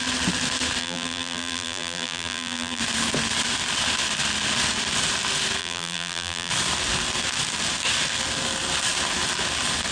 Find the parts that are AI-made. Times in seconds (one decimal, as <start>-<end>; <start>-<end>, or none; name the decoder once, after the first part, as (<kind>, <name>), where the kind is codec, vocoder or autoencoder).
0.8-2.8 (vocoder, BigVGAN v2); 5.6-6.5